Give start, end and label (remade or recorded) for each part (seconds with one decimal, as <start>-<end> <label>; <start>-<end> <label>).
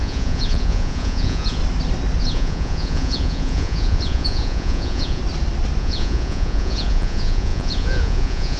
0.0-1.6 remade; 1.6-2.2 recorded; 2.2-5.2 remade; 5.2-5.8 recorded; 5.8-8.6 remade